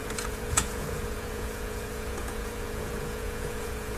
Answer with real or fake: fake